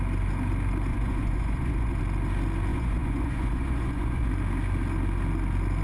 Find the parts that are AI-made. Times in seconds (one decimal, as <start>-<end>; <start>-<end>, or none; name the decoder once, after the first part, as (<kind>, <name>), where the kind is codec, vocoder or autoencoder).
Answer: 0.9-2.0 (vocoder, Vocos); 2.7-4.3